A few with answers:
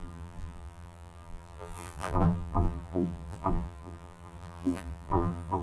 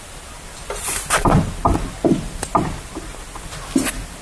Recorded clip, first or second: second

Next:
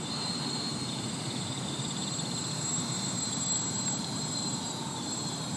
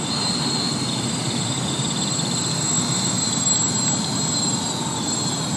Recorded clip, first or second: second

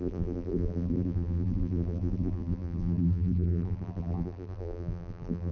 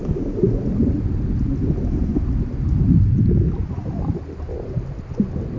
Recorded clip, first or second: second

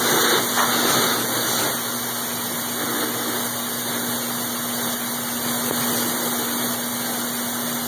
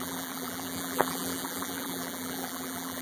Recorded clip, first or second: first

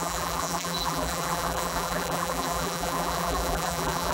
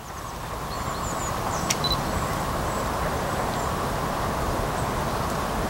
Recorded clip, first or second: second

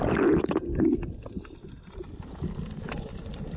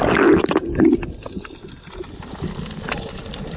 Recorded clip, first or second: second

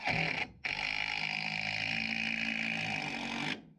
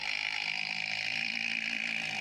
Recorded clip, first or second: first